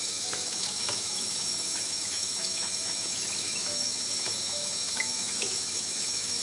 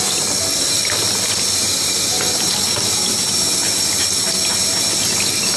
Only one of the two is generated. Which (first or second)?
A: first